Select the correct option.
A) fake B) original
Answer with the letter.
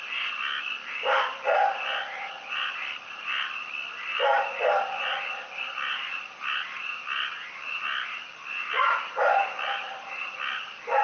B